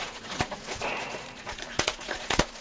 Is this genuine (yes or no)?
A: no